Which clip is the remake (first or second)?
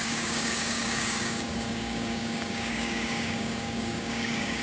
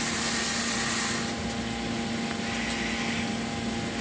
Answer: first